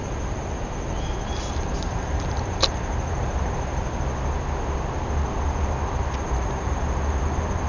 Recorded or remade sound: recorded